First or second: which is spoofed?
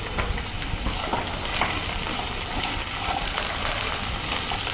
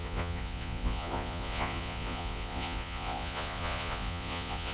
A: second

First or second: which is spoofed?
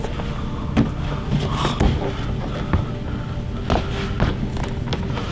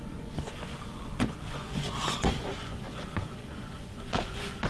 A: second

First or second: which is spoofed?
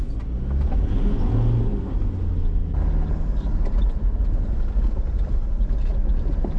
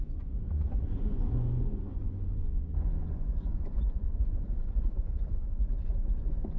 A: second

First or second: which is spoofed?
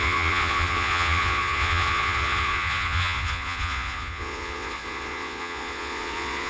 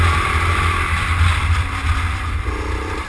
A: first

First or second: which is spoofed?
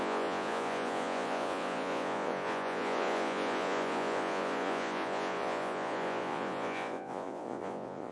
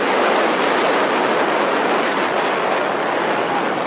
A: first